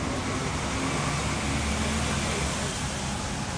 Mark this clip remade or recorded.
recorded